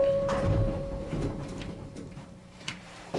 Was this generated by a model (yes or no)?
yes